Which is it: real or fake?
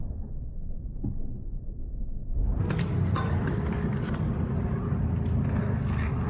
real